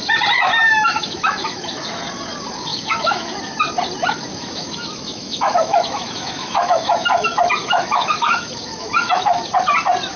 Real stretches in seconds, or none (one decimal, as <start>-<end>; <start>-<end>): 0.0-0.6; 2.0-2.7; 3.4-4.3; 9.4-10.2